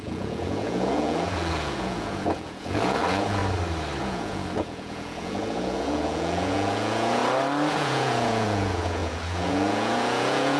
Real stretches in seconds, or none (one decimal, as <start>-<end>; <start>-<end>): 3.4-4.0; 7.2-7.7